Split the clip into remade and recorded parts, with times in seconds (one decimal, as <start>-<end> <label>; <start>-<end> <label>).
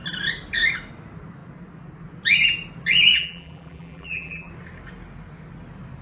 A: 0.0-3.1 recorded; 3.1-4.5 remade; 4.5-6.0 recorded